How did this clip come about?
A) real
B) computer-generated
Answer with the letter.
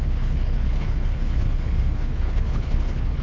B